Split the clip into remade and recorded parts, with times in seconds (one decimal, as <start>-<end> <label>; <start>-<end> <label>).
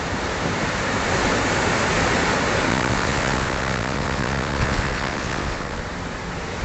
0.0-2.7 recorded; 2.7-5.8 remade; 5.8-6.6 recorded